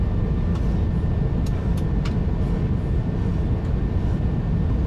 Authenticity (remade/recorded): recorded